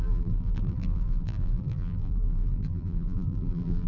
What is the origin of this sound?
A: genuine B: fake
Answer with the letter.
B